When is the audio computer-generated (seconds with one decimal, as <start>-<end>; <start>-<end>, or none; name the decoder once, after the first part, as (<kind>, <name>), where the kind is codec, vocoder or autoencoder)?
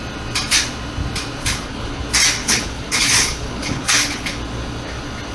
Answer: 1.4-2.0 (codec, HILCodec); 2.4-4.4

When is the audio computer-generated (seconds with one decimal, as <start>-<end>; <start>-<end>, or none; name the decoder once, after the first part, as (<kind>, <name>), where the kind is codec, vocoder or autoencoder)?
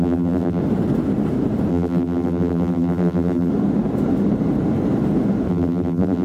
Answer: 0.0-0.6 (vocoder, BigVGAN v2); 1.7-3.5; 5.5-6.2